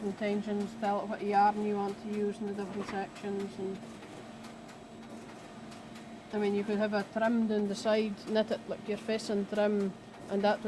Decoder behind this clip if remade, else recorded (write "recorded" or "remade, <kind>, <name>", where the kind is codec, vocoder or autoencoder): recorded